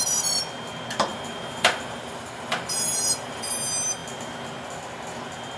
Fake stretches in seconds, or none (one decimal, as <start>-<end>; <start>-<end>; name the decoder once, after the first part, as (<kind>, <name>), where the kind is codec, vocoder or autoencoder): 1.1-3.5 (vocoder, BigVGAN v2)